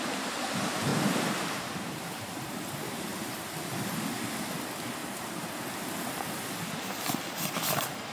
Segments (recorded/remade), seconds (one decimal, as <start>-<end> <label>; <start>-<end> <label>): 0.0-0.9 recorded; 0.9-2.4 remade; 2.4-5.0 recorded; 5.0-5.5 remade; 5.5-8.1 recorded